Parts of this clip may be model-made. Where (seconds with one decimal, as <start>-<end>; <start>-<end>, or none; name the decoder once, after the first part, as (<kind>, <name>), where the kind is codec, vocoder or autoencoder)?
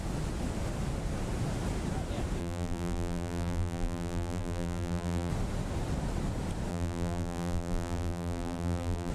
2.4-5.3 (vocoder, BigVGAN v2); 6.7-9.1